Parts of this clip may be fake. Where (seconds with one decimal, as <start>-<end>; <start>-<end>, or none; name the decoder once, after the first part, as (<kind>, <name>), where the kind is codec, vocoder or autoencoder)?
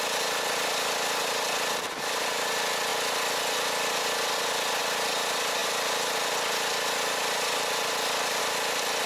0.0-2.9 (vocoder, BigVGAN v2); 4.8-9.1